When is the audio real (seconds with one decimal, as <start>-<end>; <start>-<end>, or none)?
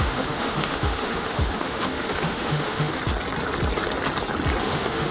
3.0-4.6